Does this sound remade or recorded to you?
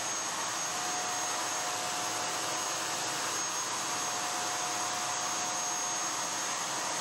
recorded